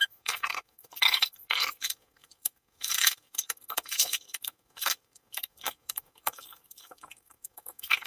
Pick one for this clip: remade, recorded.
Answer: remade